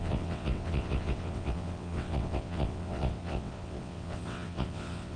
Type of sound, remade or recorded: remade